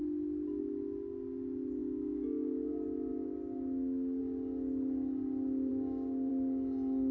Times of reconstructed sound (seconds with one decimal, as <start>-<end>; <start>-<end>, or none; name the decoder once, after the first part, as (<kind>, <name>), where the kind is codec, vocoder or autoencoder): 1.8-2.7 (codec, DAC); 5.7-6.3